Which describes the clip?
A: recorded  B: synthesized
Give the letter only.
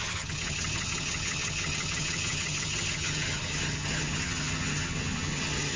B